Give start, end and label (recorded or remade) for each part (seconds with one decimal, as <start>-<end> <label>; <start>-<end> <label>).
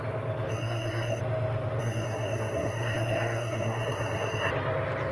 0.0-0.5 recorded; 0.5-1.2 remade; 1.2-1.8 recorded; 1.8-4.5 remade; 4.5-5.1 recorded